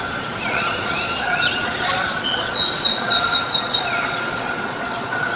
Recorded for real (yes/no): no